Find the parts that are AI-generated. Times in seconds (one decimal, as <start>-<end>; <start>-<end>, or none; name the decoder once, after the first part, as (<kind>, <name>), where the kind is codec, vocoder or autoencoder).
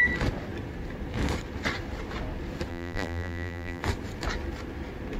2.7-3.8 (vocoder, BigVGAN v2)